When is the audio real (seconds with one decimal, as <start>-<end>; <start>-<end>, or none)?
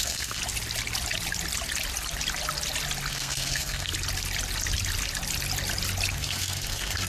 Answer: 0.4-3.1; 3.9-6.1